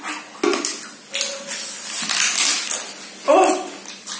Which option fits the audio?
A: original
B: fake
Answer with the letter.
A